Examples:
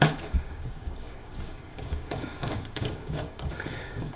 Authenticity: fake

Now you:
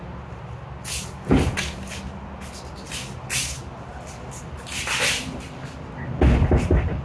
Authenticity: real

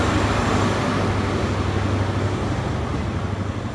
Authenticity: real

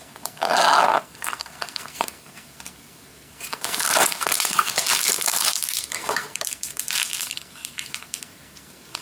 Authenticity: fake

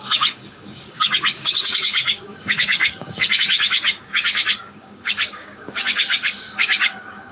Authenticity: fake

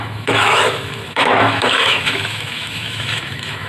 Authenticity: fake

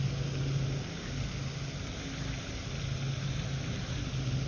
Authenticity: real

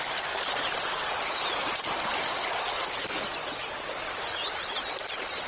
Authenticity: fake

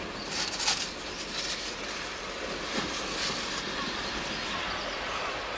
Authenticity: real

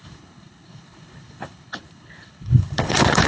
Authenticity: fake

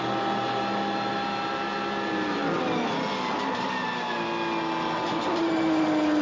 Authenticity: real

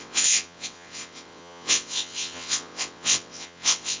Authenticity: fake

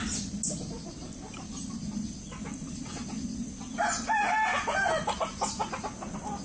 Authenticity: real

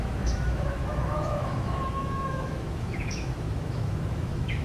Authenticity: fake